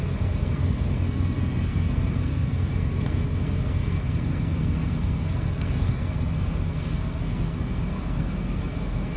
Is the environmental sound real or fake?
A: fake